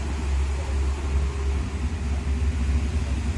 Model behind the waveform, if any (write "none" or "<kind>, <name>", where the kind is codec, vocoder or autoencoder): none